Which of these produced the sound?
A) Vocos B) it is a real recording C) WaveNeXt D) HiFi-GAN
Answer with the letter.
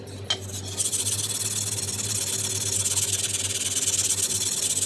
B